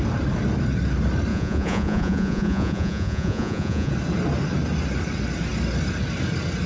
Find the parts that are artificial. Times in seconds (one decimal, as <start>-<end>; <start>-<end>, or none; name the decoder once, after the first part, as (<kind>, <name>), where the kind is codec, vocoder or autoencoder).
1.3-3.9 (vocoder, Vocos)